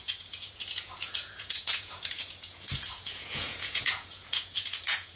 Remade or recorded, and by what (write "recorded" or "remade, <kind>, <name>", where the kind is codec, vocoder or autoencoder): remade, vocoder, Vocos